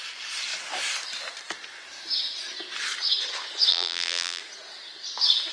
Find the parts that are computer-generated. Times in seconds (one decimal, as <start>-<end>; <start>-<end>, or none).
3.7-4.4